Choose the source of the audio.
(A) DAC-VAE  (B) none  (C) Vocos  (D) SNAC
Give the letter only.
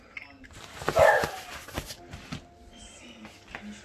B